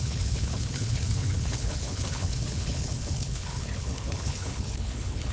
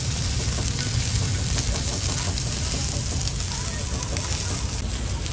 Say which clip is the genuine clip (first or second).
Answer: second